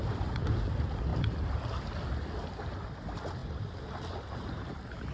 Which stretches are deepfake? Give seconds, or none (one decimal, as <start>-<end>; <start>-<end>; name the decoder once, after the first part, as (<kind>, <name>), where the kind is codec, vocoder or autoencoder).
1.1-1.8 (vocoder, BigVGAN v2)